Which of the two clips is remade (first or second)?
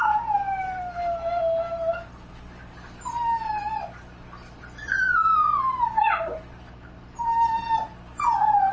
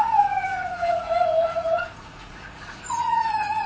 second